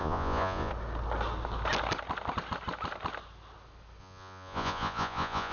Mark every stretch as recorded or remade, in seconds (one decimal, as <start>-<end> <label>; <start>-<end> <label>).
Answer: 0.0-0.7 remade; 0.7-4.0 recorded; 4.0-5.5 remade